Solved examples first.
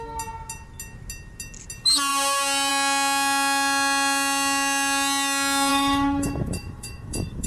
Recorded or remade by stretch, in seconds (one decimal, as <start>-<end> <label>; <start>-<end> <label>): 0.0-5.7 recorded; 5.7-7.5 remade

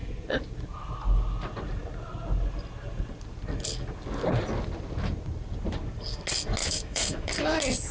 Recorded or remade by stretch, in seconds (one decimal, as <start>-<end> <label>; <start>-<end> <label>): 0.0-6.6 recorded; 6.6-7.3 remade; 7.3-7.9 recorded

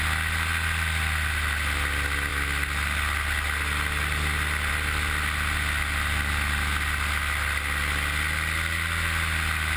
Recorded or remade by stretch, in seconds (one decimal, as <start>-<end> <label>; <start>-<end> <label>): 0.0-9.8 recorded

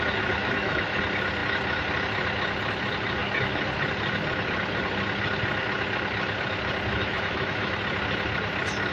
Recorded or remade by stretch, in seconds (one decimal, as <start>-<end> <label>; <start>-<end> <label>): 0.0-0.4 recorded; 0.4-1.0 remade; 1.0-6.9 recorded; 6.9-7.8 remade; 7.8-8.9 recorded

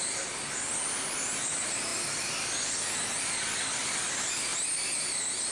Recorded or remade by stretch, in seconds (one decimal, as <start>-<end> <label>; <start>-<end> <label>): 0.0-5.5 recorded

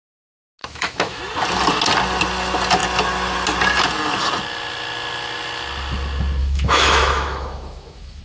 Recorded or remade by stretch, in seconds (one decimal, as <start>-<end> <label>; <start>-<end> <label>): 0.0-0.6 recorded; 0.6-1.2 remade; 1.2-6.4 recorded; 6.4-8.2 remade